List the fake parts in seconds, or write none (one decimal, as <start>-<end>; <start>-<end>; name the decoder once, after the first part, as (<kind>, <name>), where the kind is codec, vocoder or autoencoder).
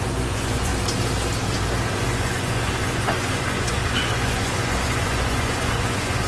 0.0-0.7 (vocoder, Vocos); 2.0-6.3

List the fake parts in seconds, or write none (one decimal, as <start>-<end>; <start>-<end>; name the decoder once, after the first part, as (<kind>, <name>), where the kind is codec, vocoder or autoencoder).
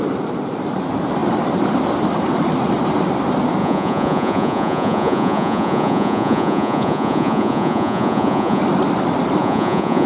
3.6-8.6 (vocoder, Vocos); 9.4-10.1